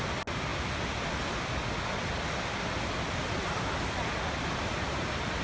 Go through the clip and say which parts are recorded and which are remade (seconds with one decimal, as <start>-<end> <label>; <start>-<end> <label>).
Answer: 0.0-5.4 recorded